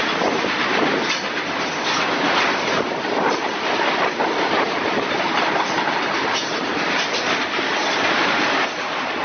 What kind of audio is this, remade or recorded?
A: remade